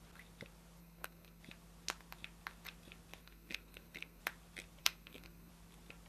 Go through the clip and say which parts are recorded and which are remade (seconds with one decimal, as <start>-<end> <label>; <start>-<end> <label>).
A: 0.0-0.8 recorded; 0.8-1.4 remade; 1.4-3.2 recorded; 3.2-4.2 remade; 4.2-4.8 recorded; 4.8-5.5 remade; 5.5-6.1 recorded